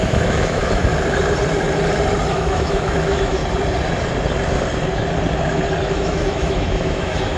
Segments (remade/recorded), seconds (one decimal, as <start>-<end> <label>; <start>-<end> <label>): 0.0-0.9 remade; 0.9-2.3 recorded; 2.3-3.4 remade; 3.4-5.9 recorded; 5.9-7.4 remade